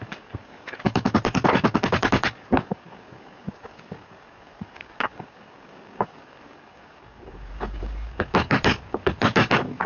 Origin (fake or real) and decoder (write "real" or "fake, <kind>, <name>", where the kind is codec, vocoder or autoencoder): fake, codec, DAC